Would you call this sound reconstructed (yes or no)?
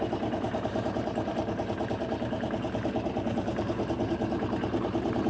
yes